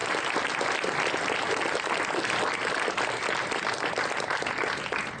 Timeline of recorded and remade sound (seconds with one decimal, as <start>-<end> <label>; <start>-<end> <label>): 0.0-5.2 recorded